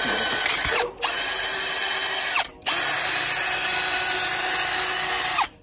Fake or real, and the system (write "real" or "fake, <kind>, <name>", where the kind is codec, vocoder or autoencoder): real